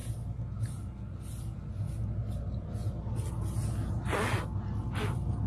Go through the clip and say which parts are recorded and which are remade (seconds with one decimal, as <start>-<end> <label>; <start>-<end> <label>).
0.0-5.5 recorded